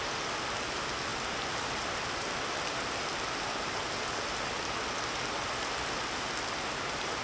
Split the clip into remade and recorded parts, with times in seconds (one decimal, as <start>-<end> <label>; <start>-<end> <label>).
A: 0.0-7.2 recorded